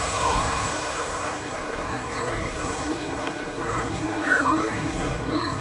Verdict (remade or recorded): remade